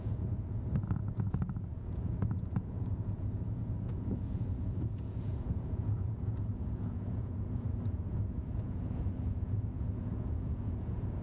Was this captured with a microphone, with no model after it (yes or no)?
no